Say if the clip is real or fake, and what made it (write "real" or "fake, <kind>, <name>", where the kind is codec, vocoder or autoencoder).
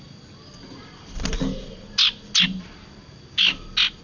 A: real